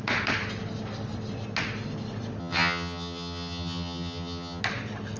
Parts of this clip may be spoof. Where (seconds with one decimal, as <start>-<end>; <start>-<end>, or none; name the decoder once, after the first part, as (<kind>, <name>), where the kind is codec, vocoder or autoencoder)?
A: 2.4-4.6 (vocoder, HiFi-GAN)